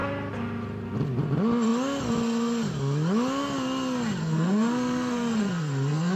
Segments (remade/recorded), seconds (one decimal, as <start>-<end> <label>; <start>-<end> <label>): 0.0-4.2 recorded; 4.2-6.2 remade